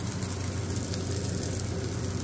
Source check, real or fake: real